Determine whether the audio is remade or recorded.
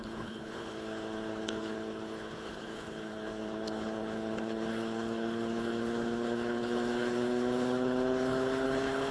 remade